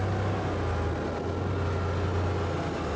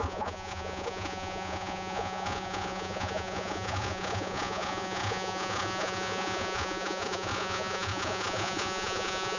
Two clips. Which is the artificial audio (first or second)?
second